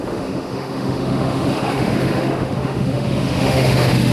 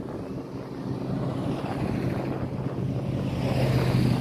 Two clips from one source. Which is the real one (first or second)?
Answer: second